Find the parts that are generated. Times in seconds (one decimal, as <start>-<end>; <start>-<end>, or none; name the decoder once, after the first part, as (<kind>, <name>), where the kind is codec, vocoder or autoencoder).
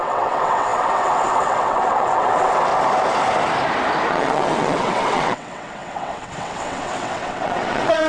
0.0-2.7 (vocoder, WaveNeXt); 4.1-8.1